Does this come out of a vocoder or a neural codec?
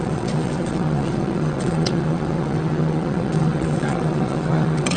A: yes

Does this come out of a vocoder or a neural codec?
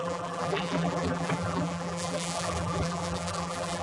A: yes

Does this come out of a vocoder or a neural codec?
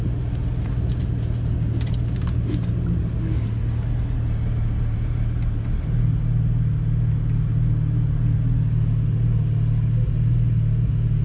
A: no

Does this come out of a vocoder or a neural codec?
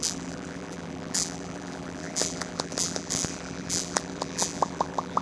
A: yes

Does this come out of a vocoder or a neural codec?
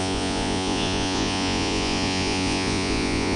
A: yes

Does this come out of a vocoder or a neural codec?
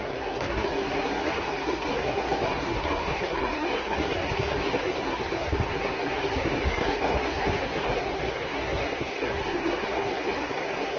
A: yes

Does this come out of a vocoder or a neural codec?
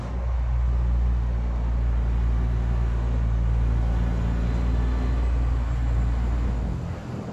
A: no